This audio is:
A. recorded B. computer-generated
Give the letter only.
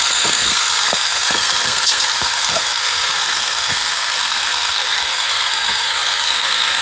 B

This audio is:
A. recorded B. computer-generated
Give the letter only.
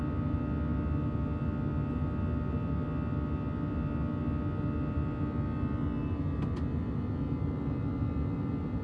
A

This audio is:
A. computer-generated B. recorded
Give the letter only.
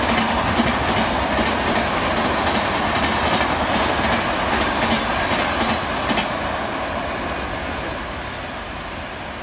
B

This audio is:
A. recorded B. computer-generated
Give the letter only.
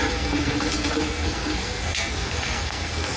B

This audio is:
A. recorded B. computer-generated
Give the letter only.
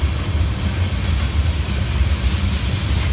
A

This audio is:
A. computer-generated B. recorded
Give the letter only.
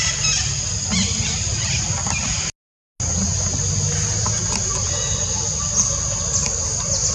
B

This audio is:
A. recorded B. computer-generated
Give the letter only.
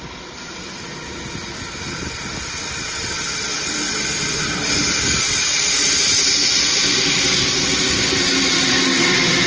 A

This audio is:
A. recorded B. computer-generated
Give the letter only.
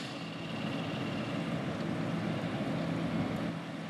A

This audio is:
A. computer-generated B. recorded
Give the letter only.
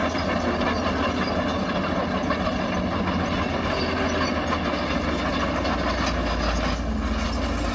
B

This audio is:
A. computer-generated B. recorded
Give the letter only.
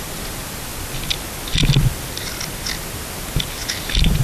B